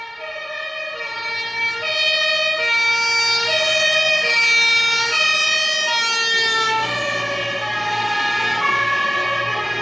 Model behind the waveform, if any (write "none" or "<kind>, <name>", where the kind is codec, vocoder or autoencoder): none